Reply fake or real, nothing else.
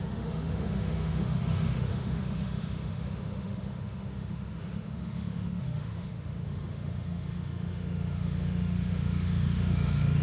fake